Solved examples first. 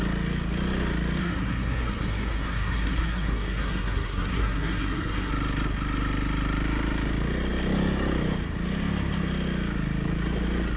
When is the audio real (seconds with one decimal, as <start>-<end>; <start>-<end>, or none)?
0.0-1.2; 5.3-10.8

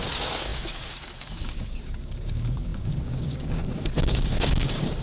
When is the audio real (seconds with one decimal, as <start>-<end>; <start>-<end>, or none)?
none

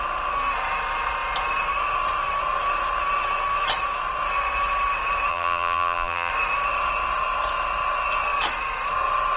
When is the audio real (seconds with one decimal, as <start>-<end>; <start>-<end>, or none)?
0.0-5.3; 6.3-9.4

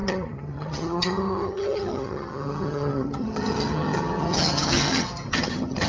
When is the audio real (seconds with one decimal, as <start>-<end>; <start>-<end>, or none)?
none